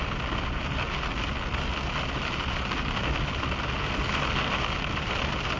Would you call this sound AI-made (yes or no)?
no